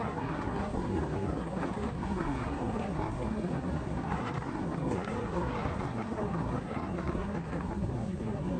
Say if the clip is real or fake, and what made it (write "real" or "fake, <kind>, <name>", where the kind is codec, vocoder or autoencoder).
fake, codec, SNAC